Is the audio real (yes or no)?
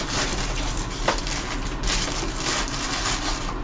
yes